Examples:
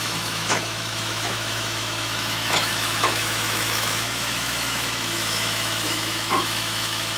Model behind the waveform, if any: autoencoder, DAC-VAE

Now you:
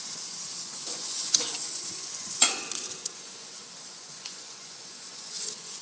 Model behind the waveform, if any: vocoder, Vocos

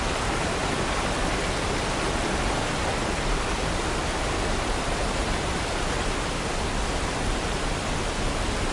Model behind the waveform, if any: none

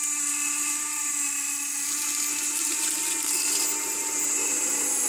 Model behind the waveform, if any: none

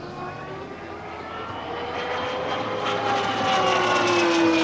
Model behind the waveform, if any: none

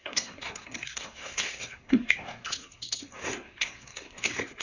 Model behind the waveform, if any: codec, SNAC